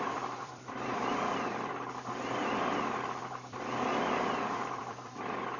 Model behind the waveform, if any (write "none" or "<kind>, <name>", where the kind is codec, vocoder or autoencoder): vocoder, BigVGAN v2